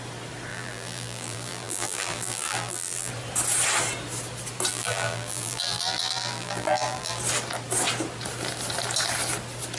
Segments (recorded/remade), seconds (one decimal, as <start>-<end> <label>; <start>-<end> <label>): 0.0-0.5 recorded; 0.5-3.1 remade; 3.1-4.7 recorded; 4.7-7.2 remade; 7.2-9.8 recorded